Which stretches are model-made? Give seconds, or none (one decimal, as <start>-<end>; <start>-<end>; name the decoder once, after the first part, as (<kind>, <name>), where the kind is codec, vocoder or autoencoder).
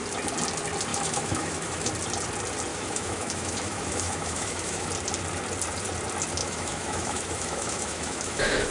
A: 0.9-1.9 (autoencoder, DAC-VAE); 2.7-4.9; 6.4-8.7